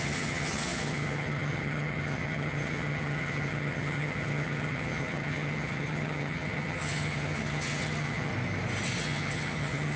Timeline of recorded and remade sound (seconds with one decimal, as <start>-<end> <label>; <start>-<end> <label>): 0.0-8.3 remade; 8.3-9.0 recorded; 9.0-10.0 remade